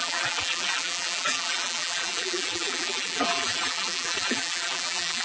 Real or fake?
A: fake